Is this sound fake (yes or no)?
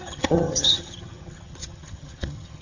yes